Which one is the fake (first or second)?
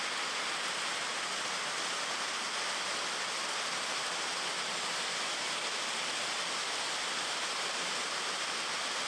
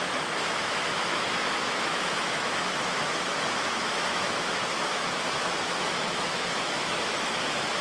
second